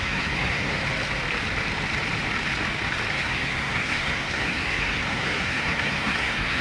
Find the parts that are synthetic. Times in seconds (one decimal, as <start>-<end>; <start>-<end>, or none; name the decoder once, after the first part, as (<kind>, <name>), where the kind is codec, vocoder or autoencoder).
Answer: 0.0-0.8 (codec, SNAC); 3.1-6.6